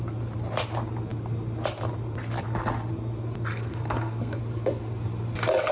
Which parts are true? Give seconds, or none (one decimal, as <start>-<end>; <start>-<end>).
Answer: 0.0-3.5; 4.4-5.7